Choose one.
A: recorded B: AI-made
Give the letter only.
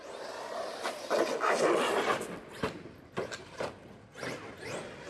A